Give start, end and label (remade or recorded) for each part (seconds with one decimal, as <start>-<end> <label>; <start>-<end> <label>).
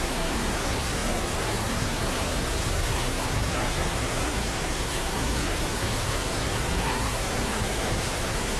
0.0-8.6 remade